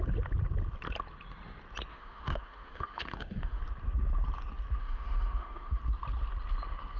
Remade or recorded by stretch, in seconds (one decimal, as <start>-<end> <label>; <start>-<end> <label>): 0.0-1.9 recorded; 1.9-3.6 remade; 3.6-4.8 recorded; 4.8-5.8 remade; 5.8-7.0 recorded